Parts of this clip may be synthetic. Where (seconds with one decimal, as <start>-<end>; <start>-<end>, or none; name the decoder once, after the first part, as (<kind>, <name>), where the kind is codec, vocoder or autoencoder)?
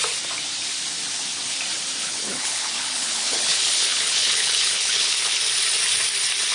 2.0-5.4 (codec, HILCodec)